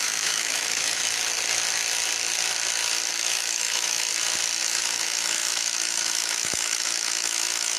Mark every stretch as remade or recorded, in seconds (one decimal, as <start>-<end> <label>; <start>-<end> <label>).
0.0-1.0 remade; 1.0-3.2 recorded; 3.2-4.1 remade; 4.1-4.6 recorded; 4.6-7.8 remade